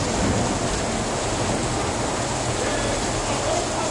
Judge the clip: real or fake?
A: real